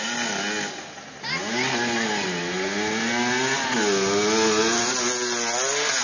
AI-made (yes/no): no